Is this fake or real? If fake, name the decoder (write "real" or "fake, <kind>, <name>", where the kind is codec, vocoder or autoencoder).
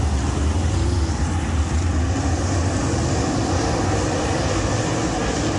real